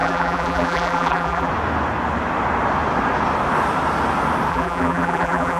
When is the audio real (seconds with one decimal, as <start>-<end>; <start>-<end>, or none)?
1.5-4.5